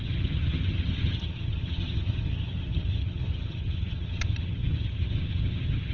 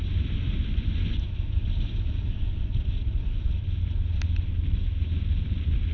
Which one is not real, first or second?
first